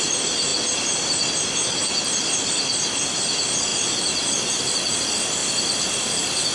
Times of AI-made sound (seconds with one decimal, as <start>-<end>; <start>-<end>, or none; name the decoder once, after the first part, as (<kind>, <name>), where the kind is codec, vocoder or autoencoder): none